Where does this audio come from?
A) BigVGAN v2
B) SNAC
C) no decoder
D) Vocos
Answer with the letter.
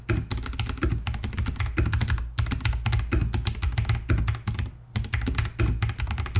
C